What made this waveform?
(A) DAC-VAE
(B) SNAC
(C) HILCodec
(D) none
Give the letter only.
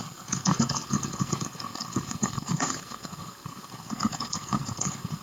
B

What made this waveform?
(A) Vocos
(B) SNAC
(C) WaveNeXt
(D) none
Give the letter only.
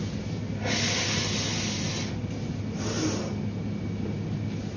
D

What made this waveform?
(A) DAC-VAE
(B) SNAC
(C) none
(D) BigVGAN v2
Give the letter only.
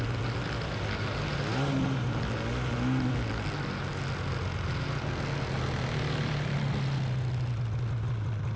C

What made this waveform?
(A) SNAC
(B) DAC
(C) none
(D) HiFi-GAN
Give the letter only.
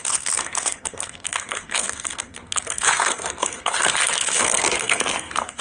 A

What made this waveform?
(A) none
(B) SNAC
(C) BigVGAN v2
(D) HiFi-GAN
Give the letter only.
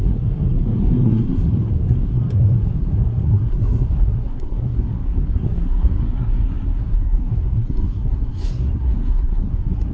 B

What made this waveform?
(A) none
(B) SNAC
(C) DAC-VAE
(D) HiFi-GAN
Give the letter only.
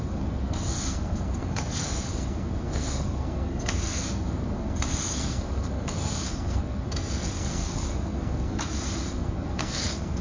B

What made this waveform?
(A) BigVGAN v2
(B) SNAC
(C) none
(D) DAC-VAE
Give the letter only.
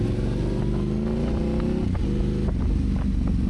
C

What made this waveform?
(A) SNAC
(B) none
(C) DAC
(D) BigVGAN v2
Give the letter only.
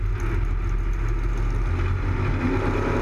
B